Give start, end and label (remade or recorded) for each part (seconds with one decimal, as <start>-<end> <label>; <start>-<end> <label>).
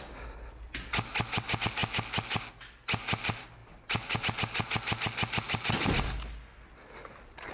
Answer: 0.0-7.5 recorded